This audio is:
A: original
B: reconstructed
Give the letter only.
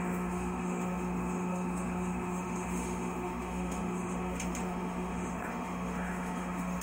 B